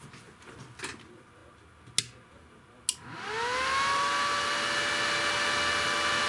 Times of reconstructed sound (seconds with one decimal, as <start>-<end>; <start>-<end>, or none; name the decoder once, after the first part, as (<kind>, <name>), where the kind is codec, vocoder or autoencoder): none